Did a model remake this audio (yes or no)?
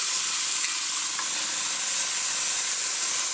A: no